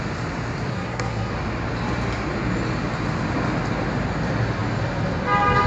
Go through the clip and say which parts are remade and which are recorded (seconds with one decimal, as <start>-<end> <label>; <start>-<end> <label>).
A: 0.0-0.7 recorded; 0.7-1.3 remade; 1.3-5.7 recorded